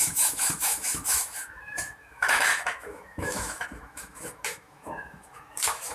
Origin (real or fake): fake